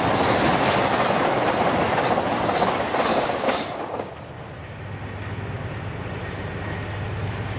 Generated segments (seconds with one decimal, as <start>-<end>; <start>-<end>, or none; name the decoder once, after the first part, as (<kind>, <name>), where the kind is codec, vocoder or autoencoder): 3.1-4.1 (codec, DAC)